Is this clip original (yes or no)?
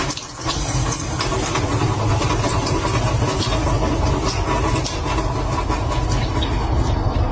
yes